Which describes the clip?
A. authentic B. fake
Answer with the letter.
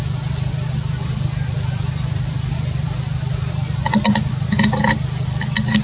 A